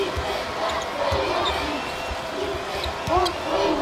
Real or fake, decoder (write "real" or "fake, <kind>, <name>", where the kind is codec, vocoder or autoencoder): real